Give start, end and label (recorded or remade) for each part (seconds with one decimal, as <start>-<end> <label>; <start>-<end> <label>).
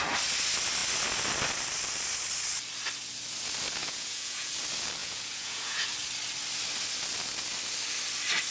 0.0-3.8 recorded; 3.8-4.5 remade; 4.5-5.0 recorded; 5.0-5.9 remade; 5.9-8.5 recorded